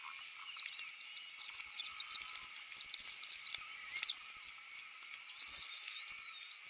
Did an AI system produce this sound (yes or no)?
no